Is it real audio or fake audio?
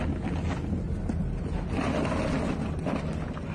real